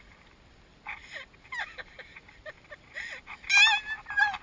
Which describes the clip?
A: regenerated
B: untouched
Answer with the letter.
B